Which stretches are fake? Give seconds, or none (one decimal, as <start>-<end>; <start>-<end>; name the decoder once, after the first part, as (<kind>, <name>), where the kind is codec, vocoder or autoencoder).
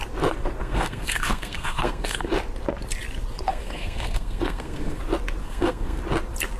0.6-2.3 (codec, SNAC); 3.5-5.0; 5.4-6.0